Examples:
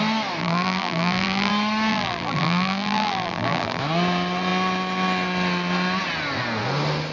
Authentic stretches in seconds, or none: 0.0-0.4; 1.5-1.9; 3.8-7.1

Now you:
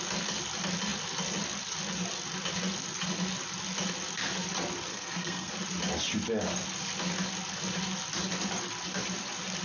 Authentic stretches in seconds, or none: 0.0-4.9; 5.5-9.6

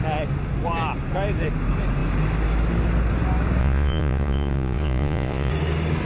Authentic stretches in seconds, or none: 0.0-3.6; 5.5-6.0

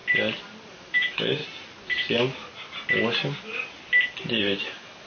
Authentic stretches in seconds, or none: 0.0-0.7; 1.4-4.4

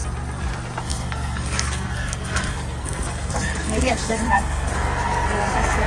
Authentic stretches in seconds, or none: 0.0-0.8

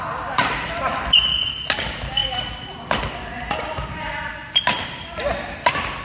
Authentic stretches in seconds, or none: 0.0-6.0

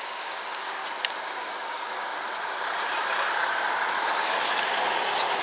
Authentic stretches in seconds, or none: 0.8-1.4; 2.1-5.4

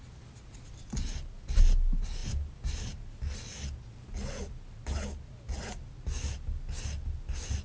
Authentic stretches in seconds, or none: 0.0-7.6